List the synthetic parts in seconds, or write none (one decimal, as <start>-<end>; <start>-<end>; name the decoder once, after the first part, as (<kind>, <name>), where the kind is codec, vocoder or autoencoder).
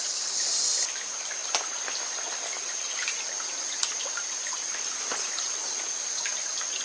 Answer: none